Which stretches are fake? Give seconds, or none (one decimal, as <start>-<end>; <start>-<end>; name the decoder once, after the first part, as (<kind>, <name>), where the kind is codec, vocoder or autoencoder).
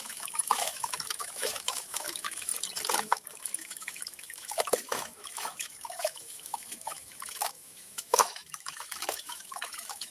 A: 0.0-2.5 (autoencoder, DAC-VAE); 3.0-10.1